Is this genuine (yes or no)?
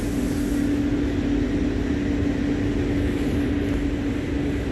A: yes